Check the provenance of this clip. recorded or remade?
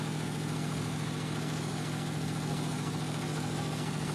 remade